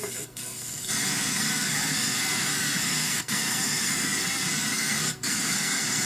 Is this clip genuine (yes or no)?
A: no